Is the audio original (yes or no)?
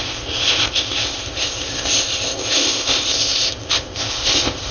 no